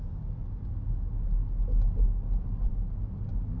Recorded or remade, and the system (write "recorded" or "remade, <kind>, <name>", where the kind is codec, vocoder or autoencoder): recorded